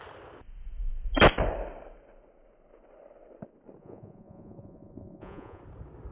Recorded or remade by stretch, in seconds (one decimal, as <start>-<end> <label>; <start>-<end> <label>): 0.0-3.8 recorded; 3.8-5.6 remade; 5.6-6.1 recorded